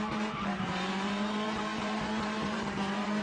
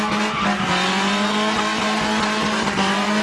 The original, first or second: second